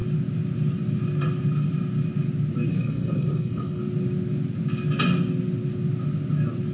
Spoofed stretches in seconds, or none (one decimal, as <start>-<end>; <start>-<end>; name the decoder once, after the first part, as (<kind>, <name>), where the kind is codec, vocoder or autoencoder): 2.7-3.8 (codec, SNAC)